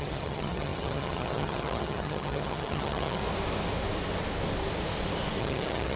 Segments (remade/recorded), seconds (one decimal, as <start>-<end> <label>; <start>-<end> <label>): 0.0-3.2 remade; 3.2-5.4 recorded; 5.4-6.0 remade